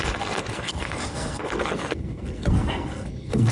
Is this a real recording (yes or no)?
no